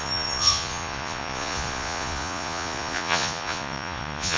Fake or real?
fake